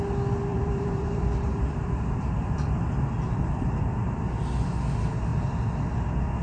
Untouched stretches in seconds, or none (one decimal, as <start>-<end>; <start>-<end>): 0.0-0.5; 4.3-6.4

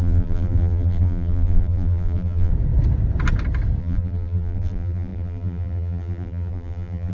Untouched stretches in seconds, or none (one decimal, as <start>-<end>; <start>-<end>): 2.5-3.8

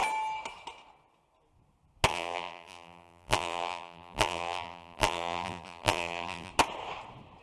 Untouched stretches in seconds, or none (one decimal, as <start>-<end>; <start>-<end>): 0.0-2.1; 6.5-7.4